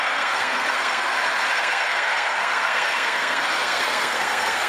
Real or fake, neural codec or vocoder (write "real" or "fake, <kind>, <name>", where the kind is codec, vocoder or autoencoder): fake, codec, SNAC